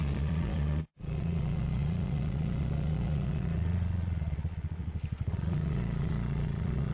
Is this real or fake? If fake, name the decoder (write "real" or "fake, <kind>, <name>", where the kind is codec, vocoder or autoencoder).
fake, vocoder, Vocos